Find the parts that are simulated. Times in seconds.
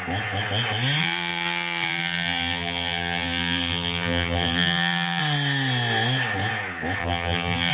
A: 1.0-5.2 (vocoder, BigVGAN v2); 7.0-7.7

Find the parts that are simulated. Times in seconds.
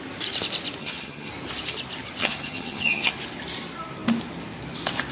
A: 0.8-1.3 (vocoder, HiFi-GAN); 2.2-3.1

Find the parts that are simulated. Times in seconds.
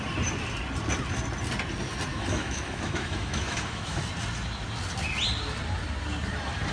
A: 2.1-4.0 (autoencoder, DAC-VAE)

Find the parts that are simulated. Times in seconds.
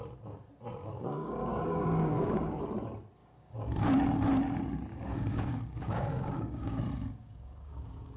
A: 0.8-2.6 (codec, DAC); 3.2-3.9; 4.9-6.8; 7.2-8.2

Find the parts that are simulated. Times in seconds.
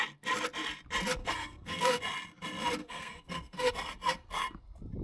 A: 1.2-2.0 (codec, SNAC); 2.8-3.7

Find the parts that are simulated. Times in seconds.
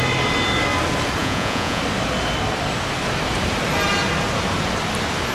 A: 1.2-1.8 (vocoder, Vocos)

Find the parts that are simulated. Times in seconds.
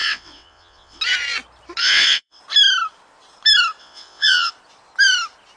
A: 0.0-1.0 (vocoder, WaveNeXt); 1.8-2.4; 3.8-4.5